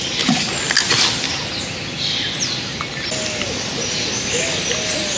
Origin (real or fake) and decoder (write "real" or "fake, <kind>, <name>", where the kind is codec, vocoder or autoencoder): real